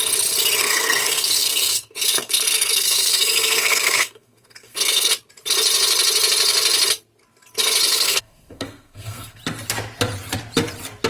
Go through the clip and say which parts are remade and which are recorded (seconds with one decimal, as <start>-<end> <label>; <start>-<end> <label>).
0.0-0.6 recorded; 0.6-5.1 remade; 5.1-7.9 recorded; 7.9-9.4 remade; 9.4-11.1 recorded